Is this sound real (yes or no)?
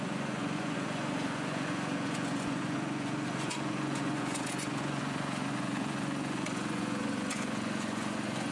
no